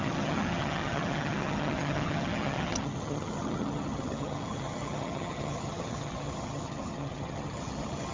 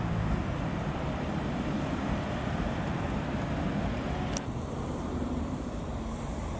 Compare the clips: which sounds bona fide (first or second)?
second